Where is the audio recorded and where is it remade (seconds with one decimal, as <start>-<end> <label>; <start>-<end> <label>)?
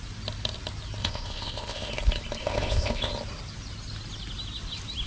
0.0-1.0 recorded; 1.0-1.9 remade; 1.9-2.4 recorded; 2.4-3.1 remade; 3.1-5.1 recorded